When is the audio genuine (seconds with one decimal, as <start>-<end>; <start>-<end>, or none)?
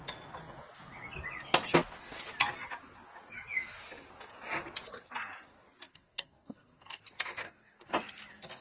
0.0-5.9; 7.0-7.4; 7.9-8.6